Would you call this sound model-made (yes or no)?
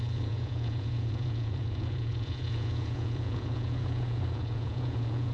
yes